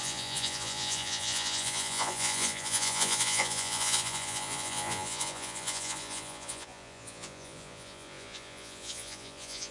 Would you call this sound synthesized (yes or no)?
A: yes